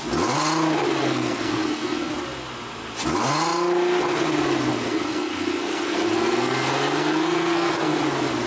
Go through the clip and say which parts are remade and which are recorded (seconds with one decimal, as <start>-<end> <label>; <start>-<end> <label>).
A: 0.0-1.0 recorded; 1.0-2.1 remade; 2.1-4.7 recorded; 4.7-8.0 remade; 8.0-8.5 recorded